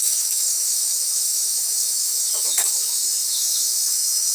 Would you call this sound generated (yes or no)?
yes